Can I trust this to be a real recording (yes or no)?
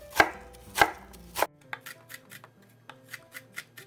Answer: yes